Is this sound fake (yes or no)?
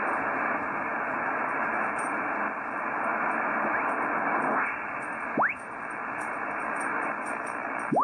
no